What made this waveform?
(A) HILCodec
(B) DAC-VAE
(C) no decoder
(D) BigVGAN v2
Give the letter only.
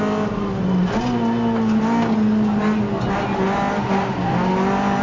C